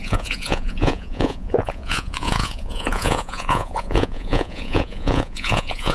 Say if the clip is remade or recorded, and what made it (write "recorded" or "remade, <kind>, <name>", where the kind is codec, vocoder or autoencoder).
remade, vocoder, Vocos